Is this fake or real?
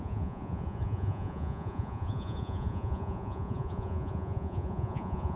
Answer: fake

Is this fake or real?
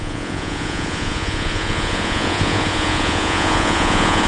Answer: fake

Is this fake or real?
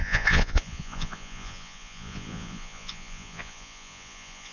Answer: fake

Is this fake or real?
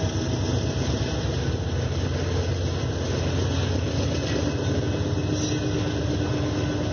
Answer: real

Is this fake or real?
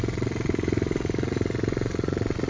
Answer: fake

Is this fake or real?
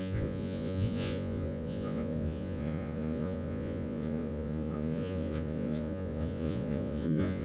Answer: fake